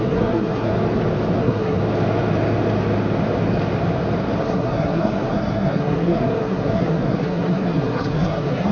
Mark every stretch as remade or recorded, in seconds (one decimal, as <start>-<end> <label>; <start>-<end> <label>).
0.0-0.7 remade; 0.7-1.4 recorded; 1.4-1.8 remade; 1.8-4.4 recorded; 4.4-8.7 remade

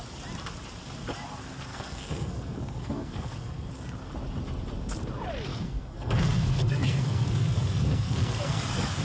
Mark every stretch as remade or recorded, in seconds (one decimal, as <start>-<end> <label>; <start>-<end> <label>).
0.0-1.7 recorded; 1.7-3.7 remade; 3.7-5.5 recorded; 5.5-9.0 remade

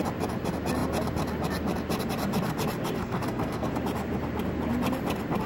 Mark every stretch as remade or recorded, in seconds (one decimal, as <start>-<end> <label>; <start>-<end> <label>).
0.0-3.0 recorded; 3.0-3.7 remade; 3.7-5.5 recorded

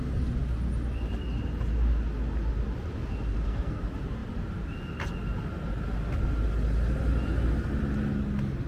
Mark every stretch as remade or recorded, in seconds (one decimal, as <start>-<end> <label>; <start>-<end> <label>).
0.0-3.3 recorded; 3.3-3.8 remade; 3.8-8.7 recorded